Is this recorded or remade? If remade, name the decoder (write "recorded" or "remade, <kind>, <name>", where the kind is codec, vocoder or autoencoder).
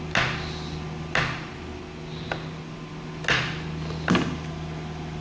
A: recorded